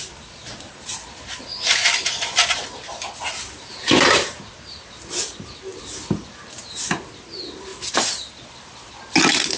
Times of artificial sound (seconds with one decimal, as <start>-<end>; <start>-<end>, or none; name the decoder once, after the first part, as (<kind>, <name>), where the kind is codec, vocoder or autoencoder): 5.7-6.3 (vocoder, BigVGAN v2); 7.7-8.9